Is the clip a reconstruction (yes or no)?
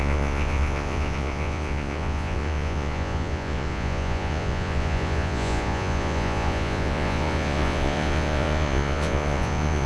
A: yes